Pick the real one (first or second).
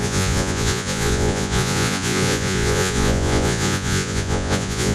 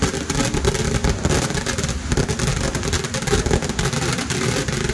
second